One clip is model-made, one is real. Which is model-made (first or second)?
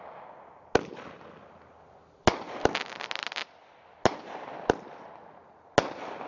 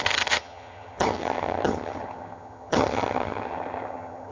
second